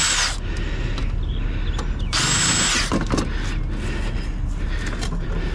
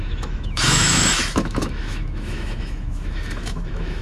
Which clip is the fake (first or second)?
second